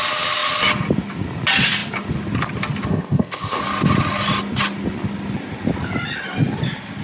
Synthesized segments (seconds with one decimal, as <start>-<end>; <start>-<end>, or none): 2.9-3.6